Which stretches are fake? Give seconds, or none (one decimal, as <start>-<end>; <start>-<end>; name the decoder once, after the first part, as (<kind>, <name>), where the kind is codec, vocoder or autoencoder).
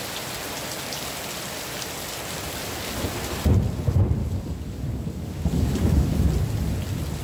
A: 4.2-6.3 (codec, DAC)